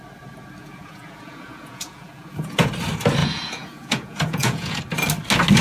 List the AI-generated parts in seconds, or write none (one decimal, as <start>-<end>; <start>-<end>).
0.6-2.7; 3.2-4.8